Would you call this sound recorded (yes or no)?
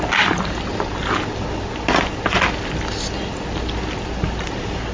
yes